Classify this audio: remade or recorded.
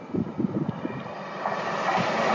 recorded